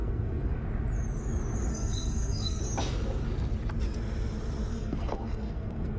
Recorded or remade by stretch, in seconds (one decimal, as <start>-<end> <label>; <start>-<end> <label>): 0.0-0.6 remade; 0.6-1.7 recorded; 1.7-2.6 remade; 2.6-4.7 recorded; 4.7-6.0 remade